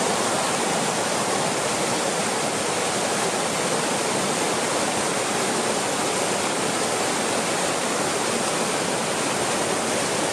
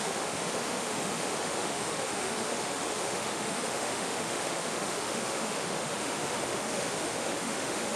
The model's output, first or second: second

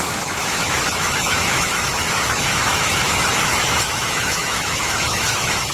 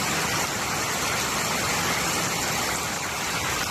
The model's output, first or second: first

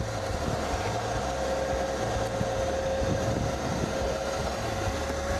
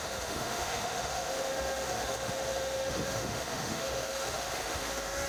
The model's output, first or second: second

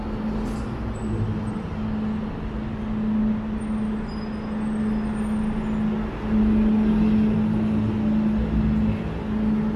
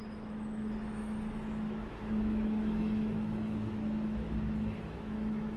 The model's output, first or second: second